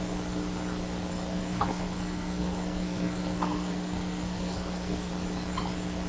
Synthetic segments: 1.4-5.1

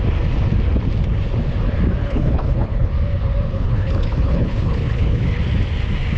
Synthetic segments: 2.0-2.9; 3.5-5.4